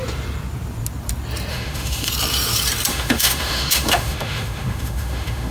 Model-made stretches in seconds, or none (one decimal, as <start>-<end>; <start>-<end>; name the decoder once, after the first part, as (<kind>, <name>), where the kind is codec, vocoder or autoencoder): 1.5-2.1 (autoencoder, DAC-VAE); 2.9-5.5